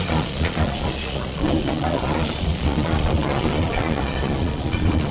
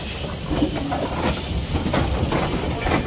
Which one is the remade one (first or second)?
first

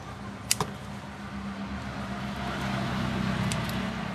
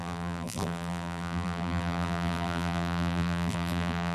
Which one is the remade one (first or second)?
second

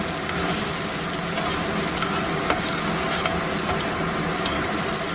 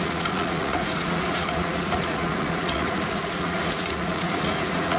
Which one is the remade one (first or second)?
second